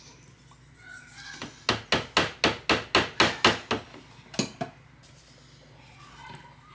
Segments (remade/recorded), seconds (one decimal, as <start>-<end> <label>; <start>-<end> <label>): 0.0-6.7 recorded